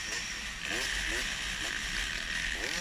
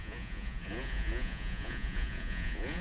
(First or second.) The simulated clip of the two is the second